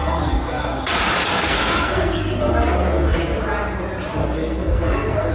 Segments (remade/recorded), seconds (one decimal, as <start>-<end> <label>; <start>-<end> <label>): 0.0-0.8 remade; 0.8-1.3 recorded; 1.3-3.2 remade; 3.2-4.2 recorded; 4.2-5.3 remade